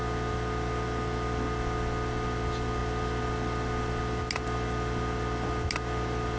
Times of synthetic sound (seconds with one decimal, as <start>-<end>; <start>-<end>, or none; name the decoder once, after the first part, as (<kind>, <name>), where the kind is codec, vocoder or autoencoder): none